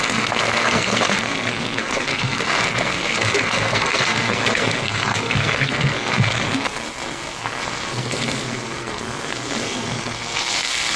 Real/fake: fake